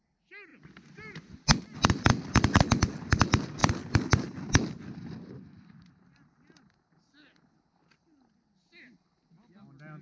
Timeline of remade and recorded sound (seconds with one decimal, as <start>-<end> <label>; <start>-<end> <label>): 0.0-10.0 recorded